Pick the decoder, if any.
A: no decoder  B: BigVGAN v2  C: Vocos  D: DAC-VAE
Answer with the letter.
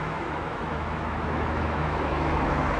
D